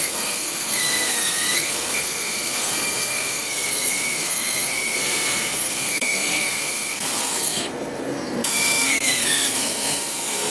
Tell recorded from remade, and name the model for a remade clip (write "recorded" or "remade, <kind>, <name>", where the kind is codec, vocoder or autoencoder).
remade, codec, SNAC